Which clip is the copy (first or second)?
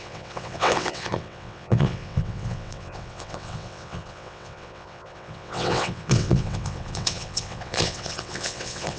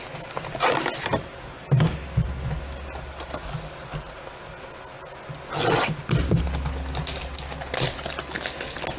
first